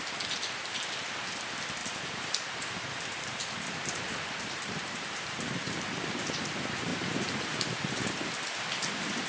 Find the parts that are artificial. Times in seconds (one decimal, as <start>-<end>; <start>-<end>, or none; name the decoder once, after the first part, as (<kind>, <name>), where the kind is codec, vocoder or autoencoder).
1.8-5.8 (vocoder, BigVGAN v2); 6.9-8.0